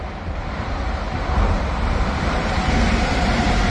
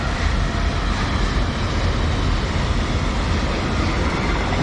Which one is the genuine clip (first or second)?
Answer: second